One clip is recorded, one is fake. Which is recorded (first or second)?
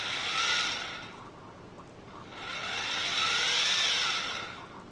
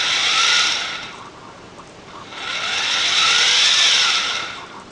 first